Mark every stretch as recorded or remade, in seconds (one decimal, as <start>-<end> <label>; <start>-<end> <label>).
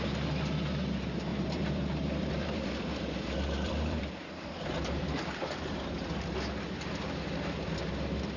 0.0-1.3 recorded; 1.3-5.6 remade; 5.6-8.4 recorded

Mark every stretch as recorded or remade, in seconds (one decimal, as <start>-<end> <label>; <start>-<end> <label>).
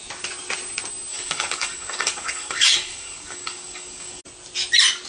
0.0-1.1 recorded; 1.1-4.2 remade; 4.2-5.1 recorded